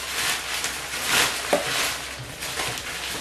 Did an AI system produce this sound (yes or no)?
no